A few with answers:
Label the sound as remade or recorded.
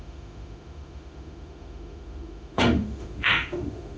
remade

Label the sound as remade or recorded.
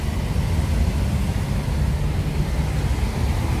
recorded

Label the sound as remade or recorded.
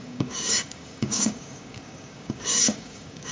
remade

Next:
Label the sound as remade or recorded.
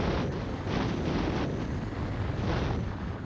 recorded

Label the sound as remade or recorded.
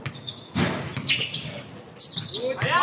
recorded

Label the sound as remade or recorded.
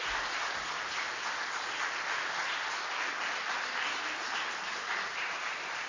recorded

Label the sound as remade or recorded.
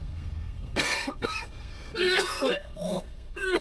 remade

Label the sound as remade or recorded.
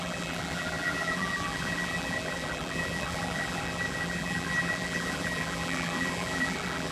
remade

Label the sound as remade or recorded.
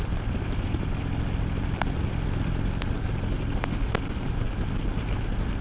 recorded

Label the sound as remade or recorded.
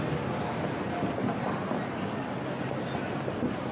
recorded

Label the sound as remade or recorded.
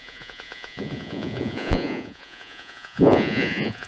remade